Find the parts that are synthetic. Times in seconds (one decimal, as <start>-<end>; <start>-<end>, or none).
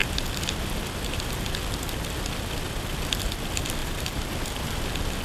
3.8-4.3